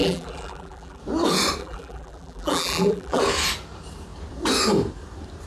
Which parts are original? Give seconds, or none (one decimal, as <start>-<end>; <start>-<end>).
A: 1.0-1.6; 3.2-5.5